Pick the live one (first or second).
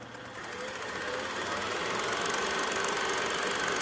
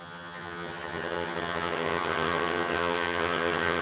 first